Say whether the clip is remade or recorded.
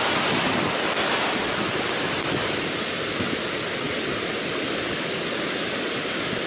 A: recorded